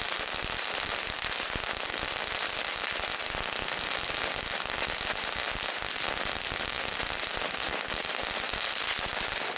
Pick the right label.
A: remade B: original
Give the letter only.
B